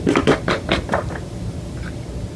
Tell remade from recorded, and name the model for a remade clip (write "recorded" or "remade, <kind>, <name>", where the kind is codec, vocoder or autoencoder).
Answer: recorded